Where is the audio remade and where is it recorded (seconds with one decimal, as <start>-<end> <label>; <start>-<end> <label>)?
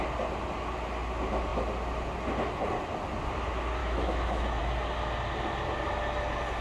0.0-3.8 recorded; 3.8-4.6 remade; 4.6-6.6 recorded